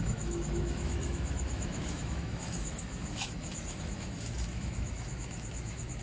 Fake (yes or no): yes